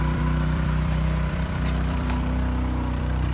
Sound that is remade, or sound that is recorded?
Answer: remade